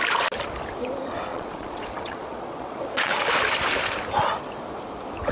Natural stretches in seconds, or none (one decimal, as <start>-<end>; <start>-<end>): 0.0-1.3; 3.1-5.3